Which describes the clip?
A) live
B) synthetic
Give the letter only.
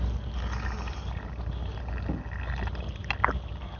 A